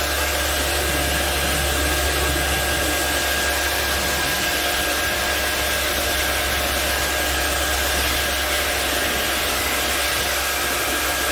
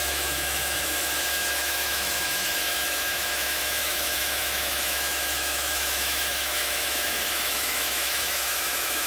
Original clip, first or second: first